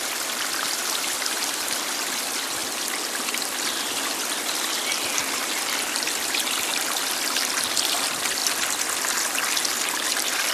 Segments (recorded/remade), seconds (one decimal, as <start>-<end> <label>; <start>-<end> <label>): 0.0-10.5 recorded

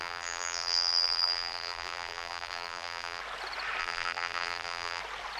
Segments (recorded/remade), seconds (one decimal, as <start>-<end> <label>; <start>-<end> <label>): 0.0-3.2 remade; 3.2-3.8 recorded; 3.8-5.0 remade; 5.0-5.4 recorded